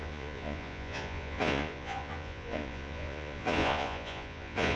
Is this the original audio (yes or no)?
no